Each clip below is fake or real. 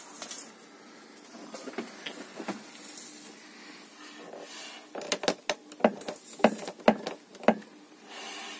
real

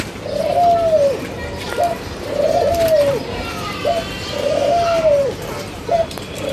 real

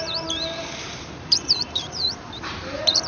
fake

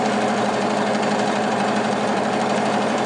fake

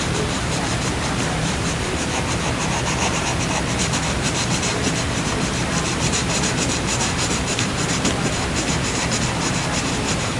fake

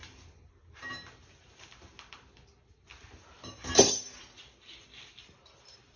real